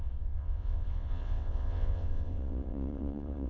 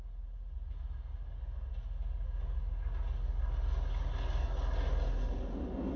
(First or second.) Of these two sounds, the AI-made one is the first